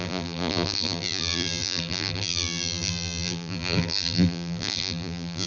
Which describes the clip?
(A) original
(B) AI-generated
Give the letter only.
B